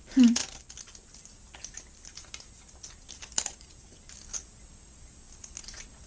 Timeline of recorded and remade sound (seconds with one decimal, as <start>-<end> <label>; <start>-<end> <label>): 0.0-6.1 recorded